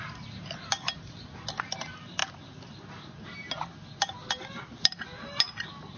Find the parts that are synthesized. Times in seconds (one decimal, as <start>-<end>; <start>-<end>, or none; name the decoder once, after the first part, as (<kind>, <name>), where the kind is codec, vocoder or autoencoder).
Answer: none